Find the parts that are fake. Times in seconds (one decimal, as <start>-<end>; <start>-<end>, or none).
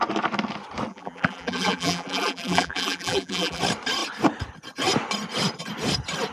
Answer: 0.9-3.6